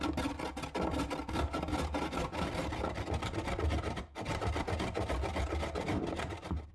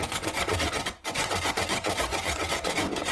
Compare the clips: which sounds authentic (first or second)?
first